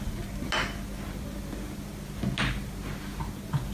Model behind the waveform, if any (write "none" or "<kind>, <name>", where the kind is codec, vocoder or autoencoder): none